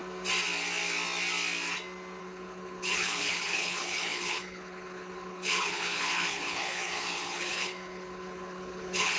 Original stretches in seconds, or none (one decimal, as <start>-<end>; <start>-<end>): 0.0-2.2